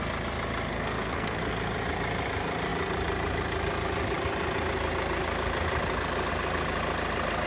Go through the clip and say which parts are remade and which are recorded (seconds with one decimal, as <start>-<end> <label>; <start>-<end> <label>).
0.0-0.7 recorded; 0.7-1.4 remade; 1.4-7.5 recorded